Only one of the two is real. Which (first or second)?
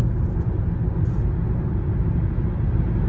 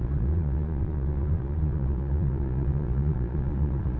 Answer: first